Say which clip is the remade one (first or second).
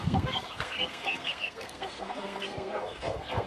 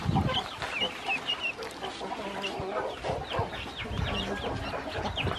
first